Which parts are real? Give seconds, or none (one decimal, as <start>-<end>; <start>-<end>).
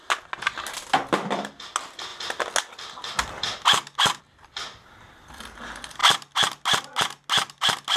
0.0-8.0